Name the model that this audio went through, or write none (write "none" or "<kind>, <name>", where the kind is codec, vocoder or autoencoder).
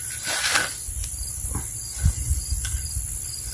none